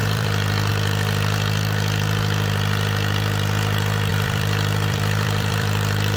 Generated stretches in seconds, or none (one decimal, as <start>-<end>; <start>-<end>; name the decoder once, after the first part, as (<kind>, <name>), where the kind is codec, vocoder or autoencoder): 0.0-0.7 (vocoder, BigVGAN v2); 4.1-6.2